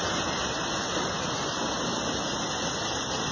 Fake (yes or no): no